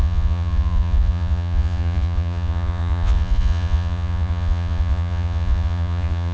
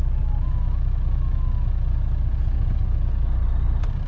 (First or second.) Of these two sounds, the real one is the second